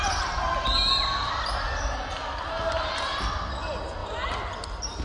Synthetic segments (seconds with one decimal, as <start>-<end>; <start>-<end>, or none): none